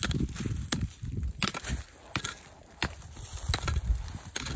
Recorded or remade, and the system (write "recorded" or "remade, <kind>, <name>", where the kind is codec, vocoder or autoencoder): recorded